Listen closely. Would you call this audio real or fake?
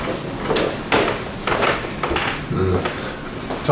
real